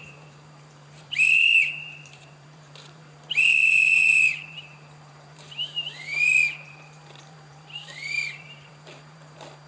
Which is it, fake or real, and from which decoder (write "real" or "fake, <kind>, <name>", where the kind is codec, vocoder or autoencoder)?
fake, vocoder, BigVGAN v2